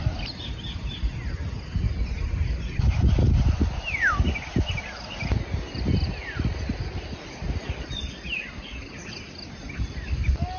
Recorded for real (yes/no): yes